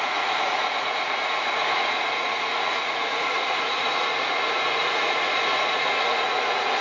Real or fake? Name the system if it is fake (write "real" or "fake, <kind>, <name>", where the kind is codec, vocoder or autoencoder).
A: fake, vocoder, Vocos